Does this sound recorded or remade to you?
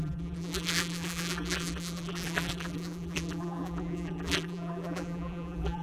remade